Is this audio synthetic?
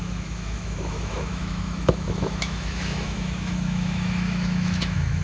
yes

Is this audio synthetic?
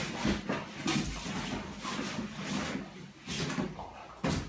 no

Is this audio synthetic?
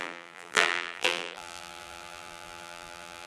yes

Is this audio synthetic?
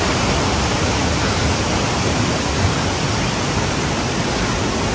no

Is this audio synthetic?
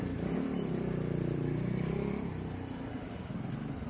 yes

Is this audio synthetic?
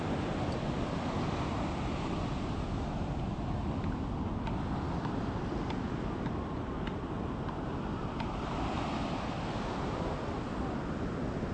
no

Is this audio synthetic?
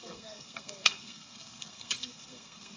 yes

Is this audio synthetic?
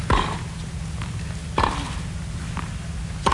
no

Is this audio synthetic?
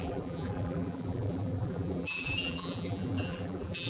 yes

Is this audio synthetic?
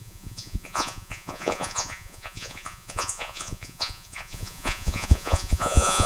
yes